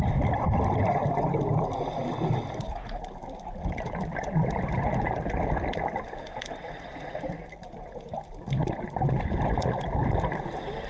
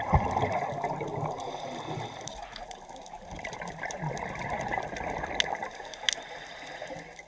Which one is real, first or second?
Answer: second